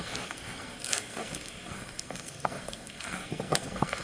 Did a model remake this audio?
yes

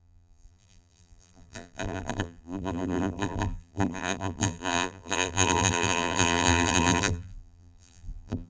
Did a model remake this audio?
yes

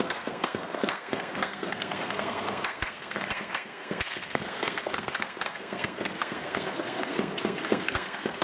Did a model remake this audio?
yes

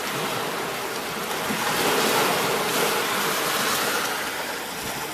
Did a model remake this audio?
no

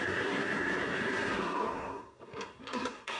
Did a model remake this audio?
yes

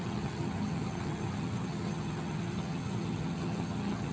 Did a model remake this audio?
yes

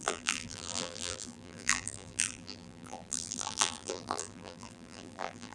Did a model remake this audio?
yes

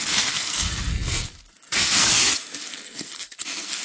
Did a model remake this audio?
yes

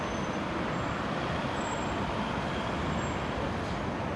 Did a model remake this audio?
no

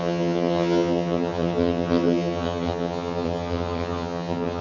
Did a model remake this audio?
yes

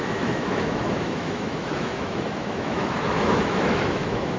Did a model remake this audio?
yes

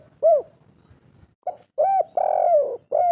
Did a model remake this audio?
no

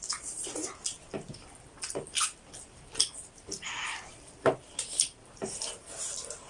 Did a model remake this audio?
no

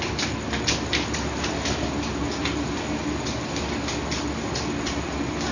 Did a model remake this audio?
no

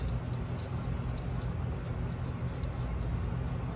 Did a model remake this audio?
no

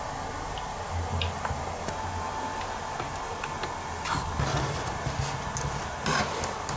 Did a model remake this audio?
no